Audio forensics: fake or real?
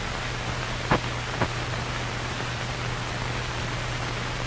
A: real